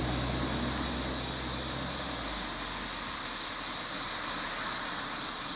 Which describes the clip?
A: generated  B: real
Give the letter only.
B